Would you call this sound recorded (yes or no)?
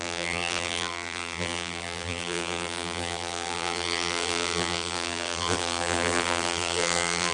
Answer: no